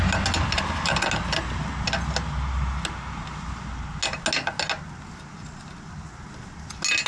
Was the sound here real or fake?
real